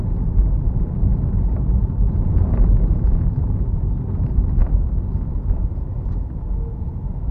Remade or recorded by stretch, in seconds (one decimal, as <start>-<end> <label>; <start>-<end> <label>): 0.0-4.6 remade; 4.6-6.8 recorded; 6.8-7.3 remade